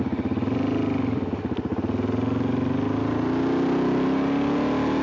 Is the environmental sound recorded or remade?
recorded